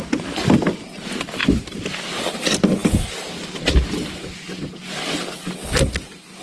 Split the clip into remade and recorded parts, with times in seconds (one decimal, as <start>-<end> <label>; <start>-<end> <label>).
0.0-2.8 recorded; 2.8-3.3 remade; 3.3-6.4 recorded

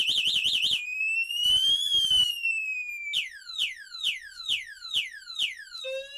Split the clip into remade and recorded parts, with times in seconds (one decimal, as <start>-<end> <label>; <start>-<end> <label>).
0.0-6.2 recorded

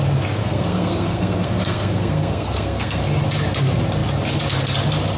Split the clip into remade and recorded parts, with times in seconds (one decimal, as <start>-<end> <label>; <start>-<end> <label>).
0.0-0.4 recorded; 0.4-3.0 remade; 3.0-5.2 recorded

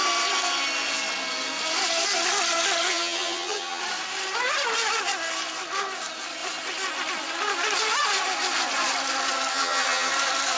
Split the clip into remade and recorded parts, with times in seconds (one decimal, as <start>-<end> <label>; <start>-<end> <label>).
0.0-2.9 recorded; 2.9-3.8 remade; 3.8-9.5 recorded; 9.5-10.1 remade; 10.1-10.6 recorded

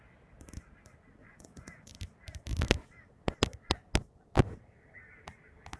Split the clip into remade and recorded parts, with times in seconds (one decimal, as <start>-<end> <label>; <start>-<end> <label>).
0.0-1.2 recorded; 1.2-1.9 remade; 1.9-5.8 recorded